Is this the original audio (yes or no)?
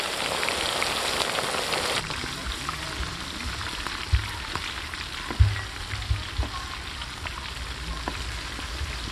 yes